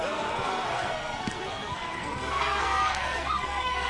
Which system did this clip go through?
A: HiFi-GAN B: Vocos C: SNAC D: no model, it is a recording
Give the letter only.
C